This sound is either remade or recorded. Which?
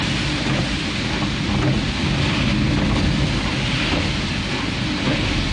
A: recorded